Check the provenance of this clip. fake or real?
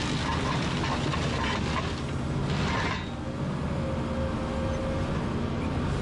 real